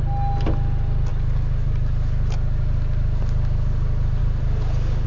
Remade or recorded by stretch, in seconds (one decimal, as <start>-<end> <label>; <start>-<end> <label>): 0.0-5.1 recorded